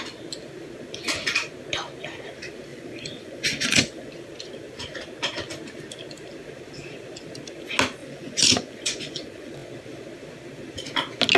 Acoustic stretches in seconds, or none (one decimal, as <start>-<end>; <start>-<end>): 0.0-2.7; 4.1-8.0; 9.7-11.4